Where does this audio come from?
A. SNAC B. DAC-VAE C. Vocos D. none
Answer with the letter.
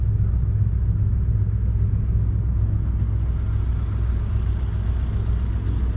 D